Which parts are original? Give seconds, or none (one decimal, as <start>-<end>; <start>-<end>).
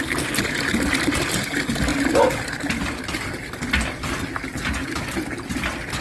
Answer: 0.0-6.0